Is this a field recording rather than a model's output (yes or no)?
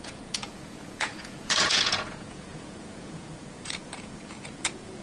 no